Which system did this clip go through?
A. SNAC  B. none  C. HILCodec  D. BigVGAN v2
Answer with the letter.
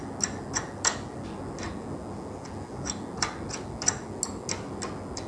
B